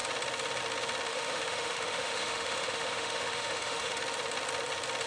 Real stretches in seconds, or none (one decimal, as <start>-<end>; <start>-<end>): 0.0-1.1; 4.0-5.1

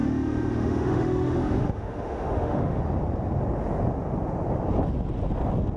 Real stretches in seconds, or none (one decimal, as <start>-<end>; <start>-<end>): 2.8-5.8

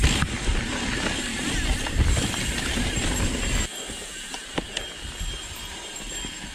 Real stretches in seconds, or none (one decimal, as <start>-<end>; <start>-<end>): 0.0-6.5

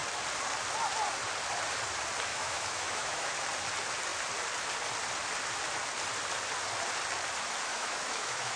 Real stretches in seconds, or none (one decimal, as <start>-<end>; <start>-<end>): 0.0-2.3; 3.3-7.7